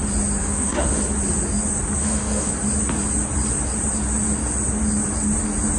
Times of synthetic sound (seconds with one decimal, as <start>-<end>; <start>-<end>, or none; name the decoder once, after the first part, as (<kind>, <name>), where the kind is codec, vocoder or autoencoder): 0.4-1.0 (autoencoder, DAC-VAE); 2.0-2.5

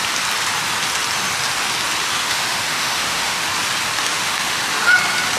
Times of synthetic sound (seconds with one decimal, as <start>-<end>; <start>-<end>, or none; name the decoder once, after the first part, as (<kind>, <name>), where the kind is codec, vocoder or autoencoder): 2.2-3.5 (autoencoder, DAC-VAE); 4.0-4.6